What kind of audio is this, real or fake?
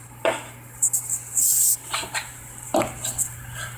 real